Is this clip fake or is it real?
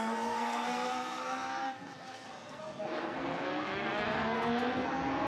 fake